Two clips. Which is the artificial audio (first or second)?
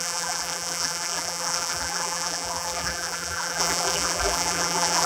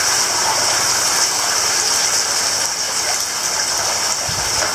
first